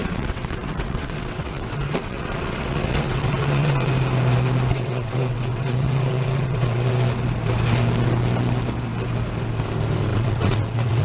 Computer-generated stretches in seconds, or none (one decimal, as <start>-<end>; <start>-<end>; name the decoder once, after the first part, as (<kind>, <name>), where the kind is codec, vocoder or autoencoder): 0.0-3.9 (vocoder, WaveNeXt); 4.7-6.9; 10.1-11.0